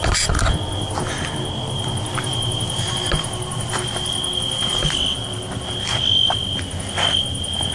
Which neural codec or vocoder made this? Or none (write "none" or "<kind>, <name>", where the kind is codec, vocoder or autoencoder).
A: none